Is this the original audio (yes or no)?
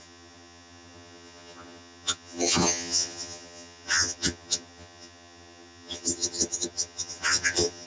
no